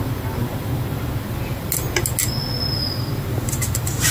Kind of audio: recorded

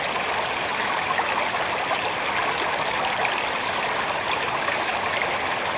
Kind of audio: recorded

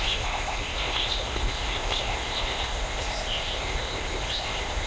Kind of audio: remade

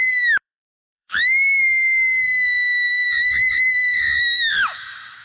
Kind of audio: remade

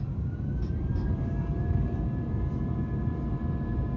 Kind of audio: remade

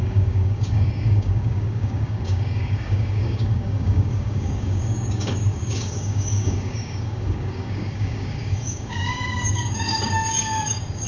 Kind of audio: remade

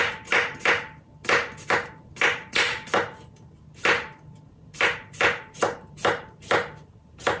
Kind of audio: recorded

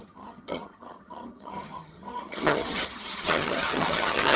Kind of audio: remade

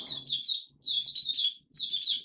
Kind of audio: recorded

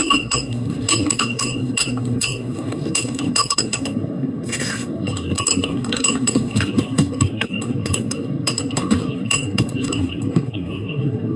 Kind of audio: remade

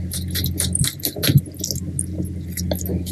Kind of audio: recorded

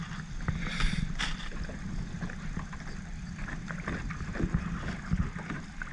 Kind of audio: recorded